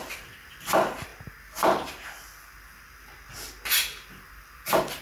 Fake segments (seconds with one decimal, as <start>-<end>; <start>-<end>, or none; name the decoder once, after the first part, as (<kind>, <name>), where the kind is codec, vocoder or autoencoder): 0.0-1.1 (vocoder, BigVGAN v2); 4.1-5.0